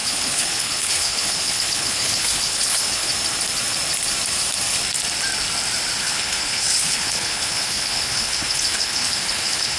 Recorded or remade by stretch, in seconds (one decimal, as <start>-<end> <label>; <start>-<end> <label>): 0.0-3.1 remade; 3.1-6.0 recorded; 6.0-9.8 remade